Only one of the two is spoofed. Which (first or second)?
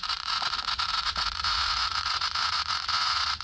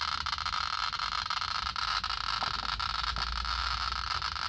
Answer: first